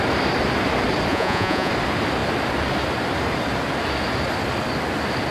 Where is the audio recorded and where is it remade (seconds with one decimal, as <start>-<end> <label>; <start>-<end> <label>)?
0.0-1.1 recorded; 1.1-1.7 remade; 1.7-5.3 recorded

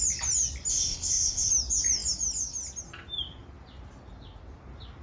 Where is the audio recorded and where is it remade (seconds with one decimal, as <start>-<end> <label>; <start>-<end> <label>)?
0.0-0.7 recorded; 0.7-1.5 remade; 1.5-5.0 recorded

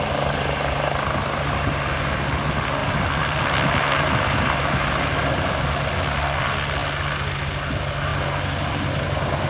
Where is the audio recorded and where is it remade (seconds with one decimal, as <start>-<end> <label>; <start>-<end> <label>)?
0.0-2.8 recorded; 2.8-3.4 remade; 3.4-9.5 recorded

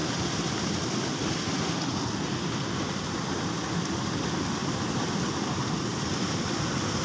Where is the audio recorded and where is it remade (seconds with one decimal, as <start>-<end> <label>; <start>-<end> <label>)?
0.0-7.0 recorded

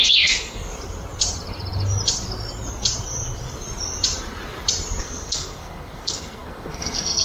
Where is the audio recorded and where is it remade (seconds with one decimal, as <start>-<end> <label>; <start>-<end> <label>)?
0.0-0.7 remade; 0.7-5.0 recorded; 5.0-7.2 remade

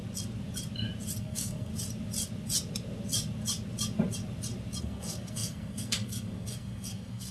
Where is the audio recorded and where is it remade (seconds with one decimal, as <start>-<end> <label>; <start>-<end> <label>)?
0.0-1.2 recorded; 1.2-1.7 remade; 1.7-4.8 recorded; 4.8-7.3 remade

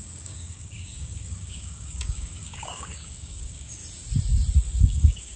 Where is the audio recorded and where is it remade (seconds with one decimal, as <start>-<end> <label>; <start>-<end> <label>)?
0.0-3.8 remade; 3.8-4.8 recorded; 4.8-5.4 remade

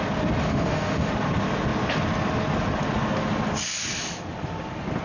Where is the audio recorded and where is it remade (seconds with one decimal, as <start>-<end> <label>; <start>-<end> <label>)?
0.0-0.4 recorded; 0.4-1.1 remade; 1.1-5.0 recorded